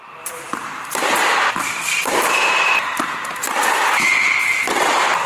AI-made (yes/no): yes